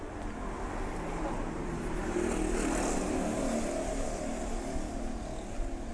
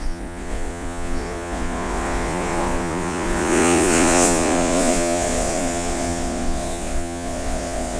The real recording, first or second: first